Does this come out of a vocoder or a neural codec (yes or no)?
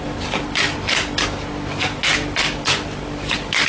no